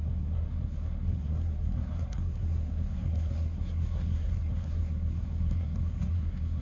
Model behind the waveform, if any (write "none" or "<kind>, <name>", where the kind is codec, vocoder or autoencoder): codec, SNAC